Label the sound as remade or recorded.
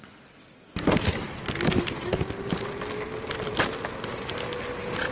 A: recorded